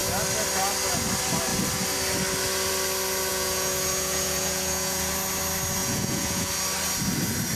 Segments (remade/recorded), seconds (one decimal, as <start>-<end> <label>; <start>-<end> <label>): 0.0-3.3 recorded; 3.3-5.1 remade; 5.1-5.8 recorded; 5.8-6.5 remade; 6.5-7.6 recorded